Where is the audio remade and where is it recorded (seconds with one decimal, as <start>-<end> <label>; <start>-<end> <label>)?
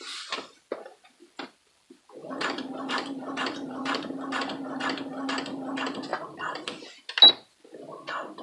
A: 0.0-2.2 recorded; 2.2-4.2 remade; 4.2-6.1 recorded; 6.1-6.6 remade; 6.6-8.4 recorded